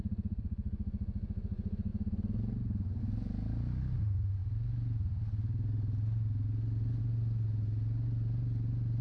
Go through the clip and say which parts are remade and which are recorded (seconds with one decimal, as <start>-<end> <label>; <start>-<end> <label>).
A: 0.0-9.0 recorded